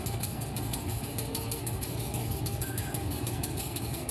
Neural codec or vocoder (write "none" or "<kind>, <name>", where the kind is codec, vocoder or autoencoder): codec, SNAC